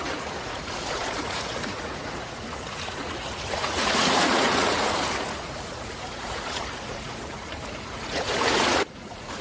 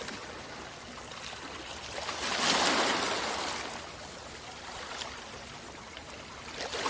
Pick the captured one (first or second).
second